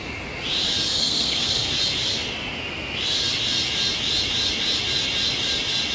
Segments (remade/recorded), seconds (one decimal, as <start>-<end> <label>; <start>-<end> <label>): 0.0-1.0 recorded; 1.0-1.7 remade; 1.7-5.9 recorded